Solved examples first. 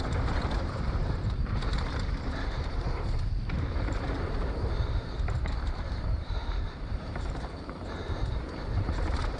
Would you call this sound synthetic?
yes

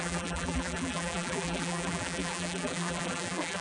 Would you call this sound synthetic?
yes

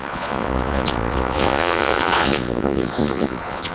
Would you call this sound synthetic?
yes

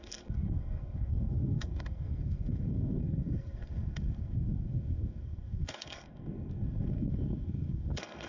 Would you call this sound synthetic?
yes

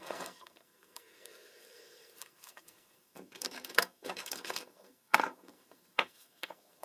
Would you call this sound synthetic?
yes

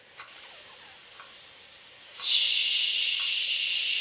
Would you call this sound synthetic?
no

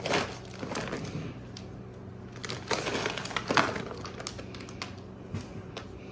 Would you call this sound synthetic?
no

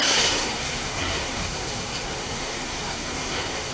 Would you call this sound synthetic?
yes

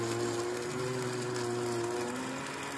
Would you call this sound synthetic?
no